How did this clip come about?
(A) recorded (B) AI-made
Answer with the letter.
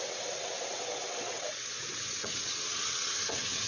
B